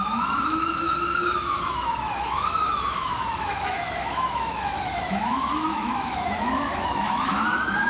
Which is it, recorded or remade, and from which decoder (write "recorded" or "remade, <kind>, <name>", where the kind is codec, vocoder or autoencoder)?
remade, autoencoder, DAC-VAE